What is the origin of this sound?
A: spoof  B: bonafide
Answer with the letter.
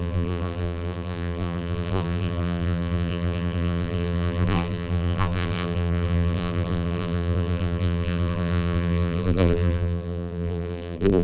A